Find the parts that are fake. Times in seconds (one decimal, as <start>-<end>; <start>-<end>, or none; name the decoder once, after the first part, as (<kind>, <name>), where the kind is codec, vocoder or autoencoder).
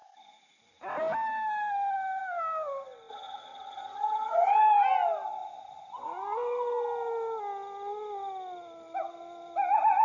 3.1-4.7 (vocoder, HiFi-GAN)